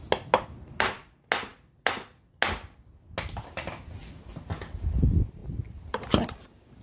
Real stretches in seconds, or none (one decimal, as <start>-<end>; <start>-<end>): 0.0-6.8